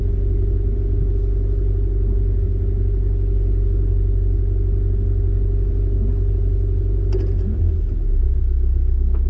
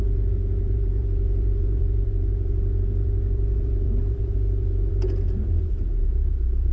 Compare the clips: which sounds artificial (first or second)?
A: second